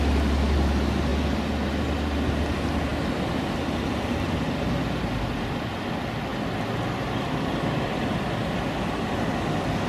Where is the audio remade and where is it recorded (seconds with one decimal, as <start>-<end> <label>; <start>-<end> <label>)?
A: 0.0-9.9 recorded